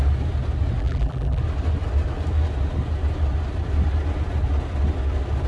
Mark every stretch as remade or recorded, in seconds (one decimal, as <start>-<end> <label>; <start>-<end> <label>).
0.0-0.8 recorded; 0.8-1.4 remade; 1.4-5.5 recorded